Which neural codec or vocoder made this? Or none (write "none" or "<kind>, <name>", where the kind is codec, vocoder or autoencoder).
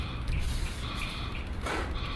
vocoder, BigVGAN v2